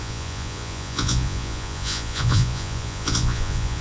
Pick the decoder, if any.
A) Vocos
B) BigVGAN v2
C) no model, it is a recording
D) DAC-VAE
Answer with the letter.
A